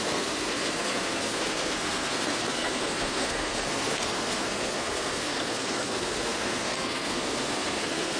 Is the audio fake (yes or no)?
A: yes